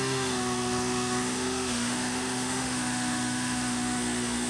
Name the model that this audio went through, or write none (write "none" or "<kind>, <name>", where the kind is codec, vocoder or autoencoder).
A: autoencoder, DAC-VAE